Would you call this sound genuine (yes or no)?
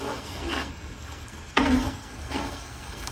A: no